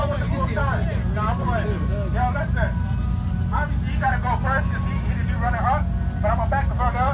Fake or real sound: real